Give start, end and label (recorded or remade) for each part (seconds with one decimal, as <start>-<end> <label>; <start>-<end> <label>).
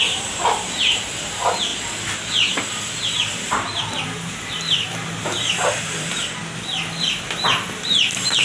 0.0-1.7 remade; 1.7-2.5 recorded; 2.5-6.4 remade; 6.4-7.7 recorded; 7.7-8.4 remade